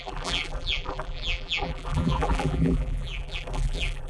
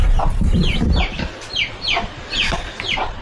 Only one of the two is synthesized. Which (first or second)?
first